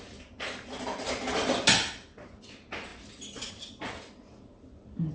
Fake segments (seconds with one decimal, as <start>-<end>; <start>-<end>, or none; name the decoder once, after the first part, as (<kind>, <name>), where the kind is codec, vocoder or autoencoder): none